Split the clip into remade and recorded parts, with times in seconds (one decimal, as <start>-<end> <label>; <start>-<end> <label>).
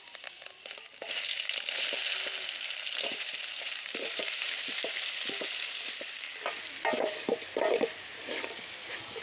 0.0-3.1 recorded; 3.1-4.9 remade; 4.9-9.2 recorded